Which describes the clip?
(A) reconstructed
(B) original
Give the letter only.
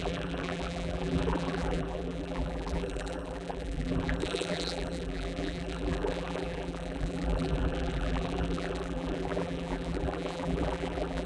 A